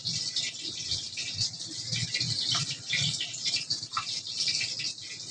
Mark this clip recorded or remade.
recorded